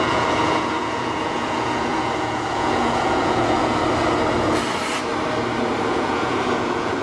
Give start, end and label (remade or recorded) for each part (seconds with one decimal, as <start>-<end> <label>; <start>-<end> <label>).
0.0-3.8 remade; 3.8-5.8 recorded; 5.8-7.0 remade